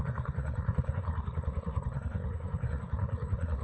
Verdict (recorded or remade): remade